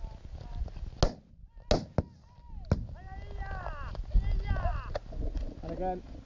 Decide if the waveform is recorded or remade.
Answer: recorded